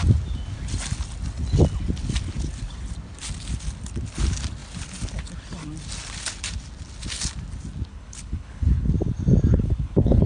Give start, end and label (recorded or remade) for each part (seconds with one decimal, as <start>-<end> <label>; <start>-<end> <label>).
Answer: 0.0-7.9 recorded; 7.9-8.9 remade; 8.9-9.5 recorded; 9.5-10.3 remade